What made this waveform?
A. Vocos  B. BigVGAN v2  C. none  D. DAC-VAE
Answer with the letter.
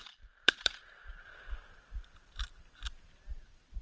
B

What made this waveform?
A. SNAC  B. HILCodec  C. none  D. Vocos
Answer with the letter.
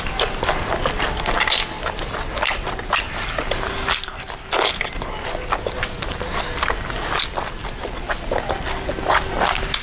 C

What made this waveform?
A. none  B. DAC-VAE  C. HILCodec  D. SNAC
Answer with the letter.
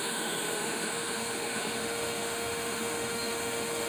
B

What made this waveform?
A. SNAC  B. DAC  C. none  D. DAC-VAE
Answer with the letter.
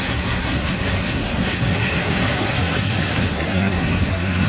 A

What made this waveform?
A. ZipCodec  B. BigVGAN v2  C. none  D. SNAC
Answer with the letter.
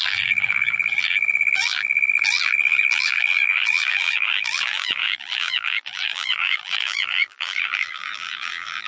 B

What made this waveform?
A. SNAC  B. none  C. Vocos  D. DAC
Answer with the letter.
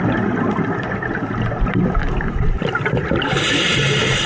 B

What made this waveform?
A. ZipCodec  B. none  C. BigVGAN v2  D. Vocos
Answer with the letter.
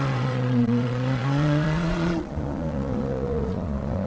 D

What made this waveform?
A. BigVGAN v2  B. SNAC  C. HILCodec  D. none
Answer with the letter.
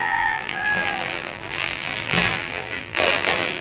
A